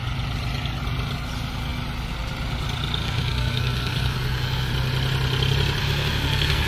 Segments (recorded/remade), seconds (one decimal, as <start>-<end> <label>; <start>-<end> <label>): 0.0-3.0 recorded; 3.0-4.7 remade; 4.7-5.8 recorded; 5.8-6.7 remade